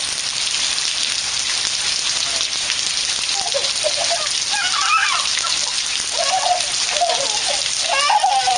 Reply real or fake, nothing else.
real